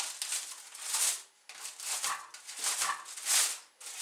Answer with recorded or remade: recorded